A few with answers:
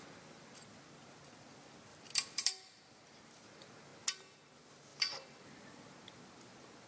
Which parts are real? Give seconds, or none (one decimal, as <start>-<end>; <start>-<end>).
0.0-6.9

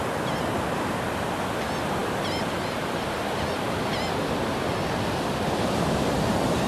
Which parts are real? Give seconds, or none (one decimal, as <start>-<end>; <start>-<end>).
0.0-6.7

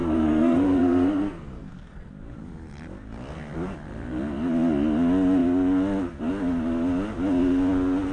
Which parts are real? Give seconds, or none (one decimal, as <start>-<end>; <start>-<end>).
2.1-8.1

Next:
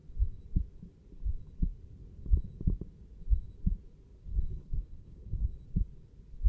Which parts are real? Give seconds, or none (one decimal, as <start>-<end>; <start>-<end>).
0.0-4.2; 5.5-6.5